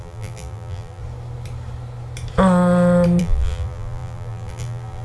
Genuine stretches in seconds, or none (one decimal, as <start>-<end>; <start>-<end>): 1.0-3.2